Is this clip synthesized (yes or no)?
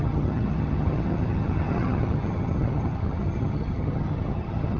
yes